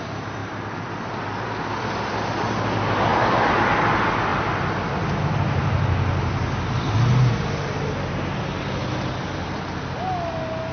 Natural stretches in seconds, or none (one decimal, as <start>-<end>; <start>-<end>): 0.0-10.7